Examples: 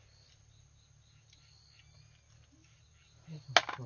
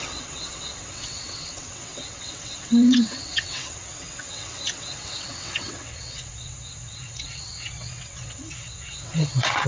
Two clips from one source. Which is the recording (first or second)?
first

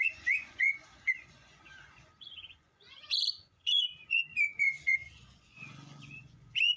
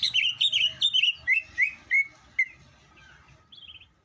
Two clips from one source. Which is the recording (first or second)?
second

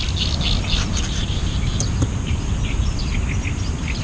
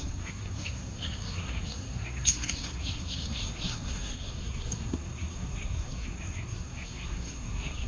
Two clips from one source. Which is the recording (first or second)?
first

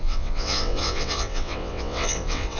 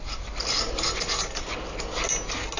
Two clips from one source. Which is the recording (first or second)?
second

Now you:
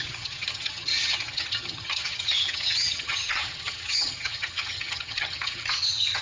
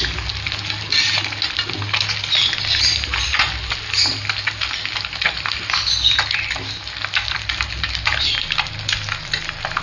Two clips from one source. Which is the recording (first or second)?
second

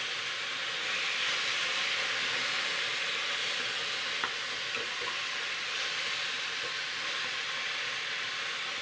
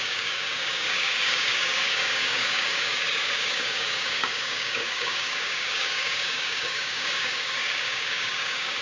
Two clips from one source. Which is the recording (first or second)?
first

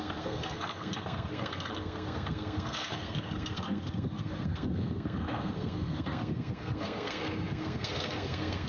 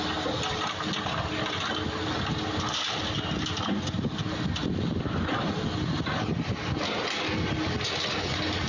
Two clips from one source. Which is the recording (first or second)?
second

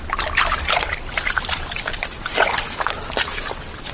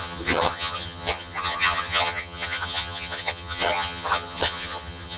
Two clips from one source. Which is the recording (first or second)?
first